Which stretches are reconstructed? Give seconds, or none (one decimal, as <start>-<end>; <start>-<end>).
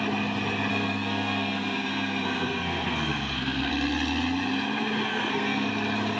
0.7-3.7; 5.1-5.7